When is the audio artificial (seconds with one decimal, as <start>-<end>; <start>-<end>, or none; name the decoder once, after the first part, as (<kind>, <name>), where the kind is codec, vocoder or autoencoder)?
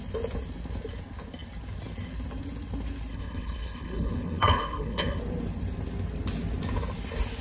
3.1-5.2 (codec, HILCodec)